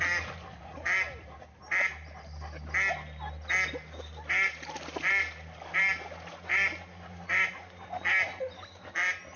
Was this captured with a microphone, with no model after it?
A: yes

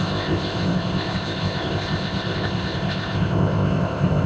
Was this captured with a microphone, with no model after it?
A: no